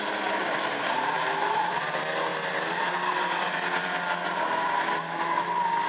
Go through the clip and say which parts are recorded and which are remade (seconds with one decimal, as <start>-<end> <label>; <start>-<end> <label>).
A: 0.0-5.9 recorded